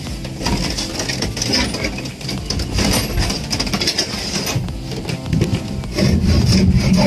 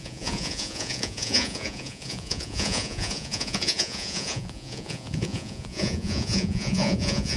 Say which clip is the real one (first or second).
first